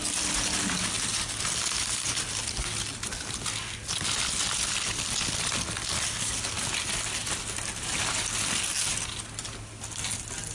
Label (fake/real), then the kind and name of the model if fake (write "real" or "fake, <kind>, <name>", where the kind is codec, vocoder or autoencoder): real